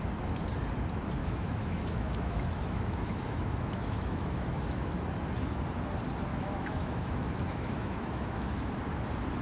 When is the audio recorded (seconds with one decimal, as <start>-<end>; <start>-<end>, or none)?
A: 0.0-1.2; 4.9-6.3; 8.7-9.4